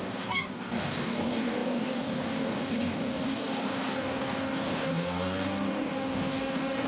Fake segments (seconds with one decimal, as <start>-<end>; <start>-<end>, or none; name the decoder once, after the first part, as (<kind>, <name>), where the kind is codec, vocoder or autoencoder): 0.0-6.9 (codec, DAC)